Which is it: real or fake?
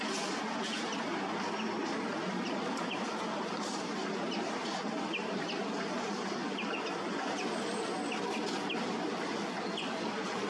real